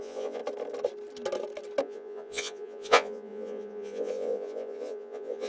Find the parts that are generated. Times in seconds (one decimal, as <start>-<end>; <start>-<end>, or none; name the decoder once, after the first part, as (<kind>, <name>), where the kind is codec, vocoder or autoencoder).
0.0-0.4 (vocoder, Vocos); 1.8-5.5